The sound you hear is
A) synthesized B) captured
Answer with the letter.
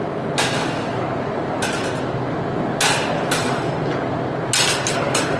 B